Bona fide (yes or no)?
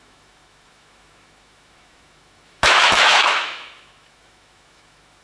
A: no